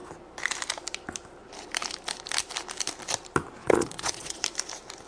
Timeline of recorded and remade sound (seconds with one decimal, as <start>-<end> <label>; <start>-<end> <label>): 0.0-3.6 recorded; 3.6-4.4 remade; 4.4-5.1 recorded